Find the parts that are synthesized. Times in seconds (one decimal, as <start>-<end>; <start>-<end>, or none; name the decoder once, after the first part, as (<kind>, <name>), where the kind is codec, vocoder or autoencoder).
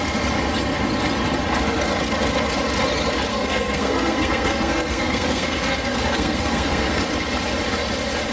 3.3-7.0 (codec, SNAC)